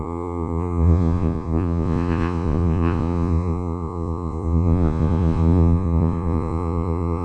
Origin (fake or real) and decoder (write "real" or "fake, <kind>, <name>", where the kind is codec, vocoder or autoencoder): fake, vocoder, Vocos